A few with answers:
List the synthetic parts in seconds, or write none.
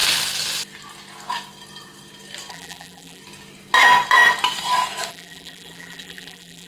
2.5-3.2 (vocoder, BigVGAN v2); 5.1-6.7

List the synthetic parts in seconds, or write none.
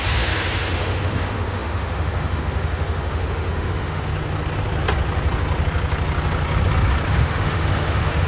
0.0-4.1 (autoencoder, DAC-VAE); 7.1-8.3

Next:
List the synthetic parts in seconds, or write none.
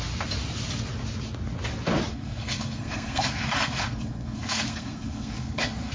2.1-5.9 (codec, SNAC)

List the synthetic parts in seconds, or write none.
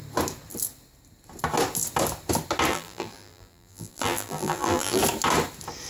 2.7-5.0 (vocoder, BigVGAN v2)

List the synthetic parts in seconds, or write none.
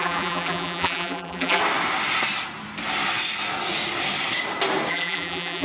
0.0-1.6 (vocoder, BigVGAN v2); 4.9-5.6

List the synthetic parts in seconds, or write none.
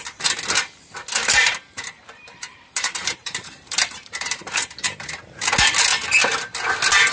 1.2-5.5 (vocoder, BigVGAN v2)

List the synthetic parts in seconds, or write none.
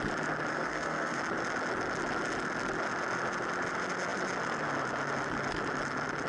0.5-1.2 (codec, SNAC)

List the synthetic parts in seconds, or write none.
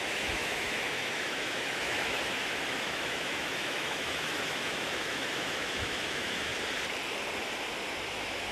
0.0-6.5 (autoencoder, DAC-VAE); 8.0-8.5